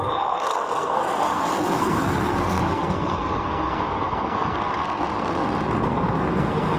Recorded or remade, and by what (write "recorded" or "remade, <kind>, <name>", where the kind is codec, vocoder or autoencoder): remade, codec, SNAC